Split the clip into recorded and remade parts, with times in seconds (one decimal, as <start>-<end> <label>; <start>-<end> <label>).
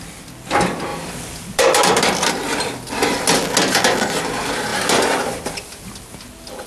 0.0-0.9 recorded; 0.9-2.3 remade; 2.3-4.7 recorded; 4.7-5.9 remade; 5.9-6.7 recorded